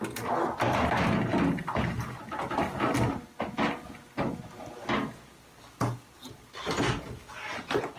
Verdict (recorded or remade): recorded